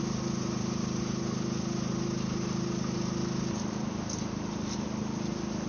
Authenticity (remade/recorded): recorded